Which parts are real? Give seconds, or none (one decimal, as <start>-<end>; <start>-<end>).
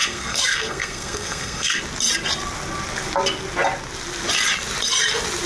1.8-5.5